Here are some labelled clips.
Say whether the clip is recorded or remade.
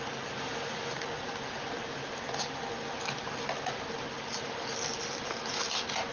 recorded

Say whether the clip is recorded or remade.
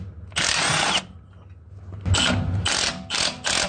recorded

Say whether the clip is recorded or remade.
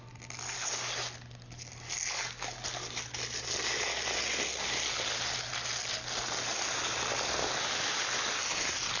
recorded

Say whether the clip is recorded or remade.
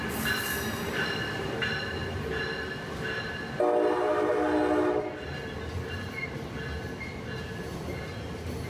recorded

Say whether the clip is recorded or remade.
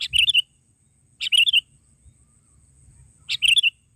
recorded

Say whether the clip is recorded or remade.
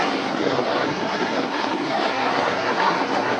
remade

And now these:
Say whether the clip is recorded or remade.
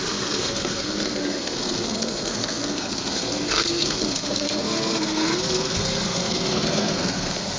remade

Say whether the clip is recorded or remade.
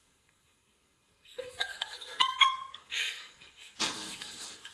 remade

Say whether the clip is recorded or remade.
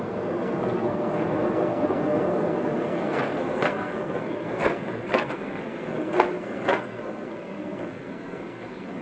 remade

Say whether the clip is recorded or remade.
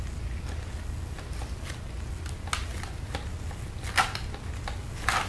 recorded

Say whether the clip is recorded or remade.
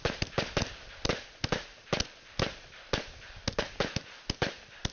recorded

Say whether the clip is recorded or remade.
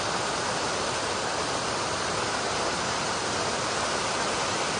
recorded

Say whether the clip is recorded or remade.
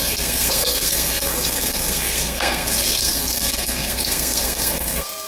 remade